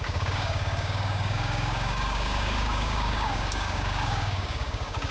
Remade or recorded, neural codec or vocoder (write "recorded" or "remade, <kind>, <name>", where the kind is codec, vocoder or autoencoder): remade, codec, DAC